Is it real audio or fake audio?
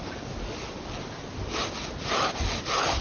real